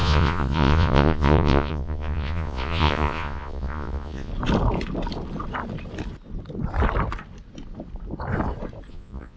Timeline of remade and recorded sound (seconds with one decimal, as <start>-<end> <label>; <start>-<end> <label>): 0.0-4.3 remade; 4.3-8.9 recorded; 8.9-9.4 remade